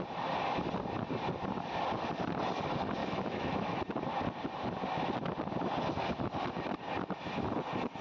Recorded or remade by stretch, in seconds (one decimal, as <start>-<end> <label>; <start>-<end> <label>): 0.0-3.0 recorded; 3.0-3.8 remade; 3.8-8.0 recorded